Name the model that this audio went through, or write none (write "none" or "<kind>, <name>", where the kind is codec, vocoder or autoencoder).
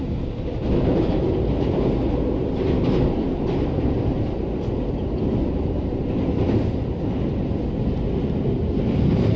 none